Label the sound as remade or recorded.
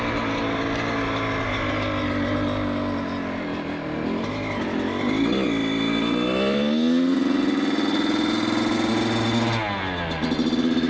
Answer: recorded